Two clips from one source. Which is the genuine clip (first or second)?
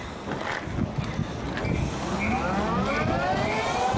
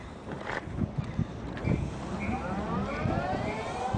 first